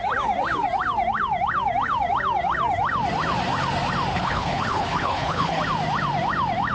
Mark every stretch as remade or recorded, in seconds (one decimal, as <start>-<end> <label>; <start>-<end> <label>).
0.0-4.1 recorded; 4.1-5.6 remade; 5.6-6.7 recorded